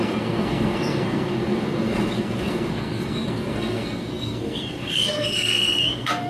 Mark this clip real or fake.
fake